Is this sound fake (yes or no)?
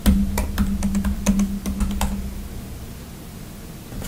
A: no